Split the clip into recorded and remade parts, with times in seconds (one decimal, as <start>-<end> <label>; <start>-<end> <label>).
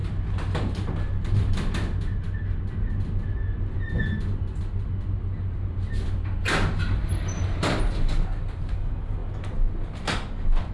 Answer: 0.0-10.7 recorded